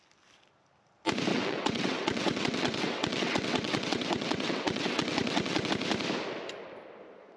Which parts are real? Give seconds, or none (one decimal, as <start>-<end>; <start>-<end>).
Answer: 0.0-1.3; 5.7-7.4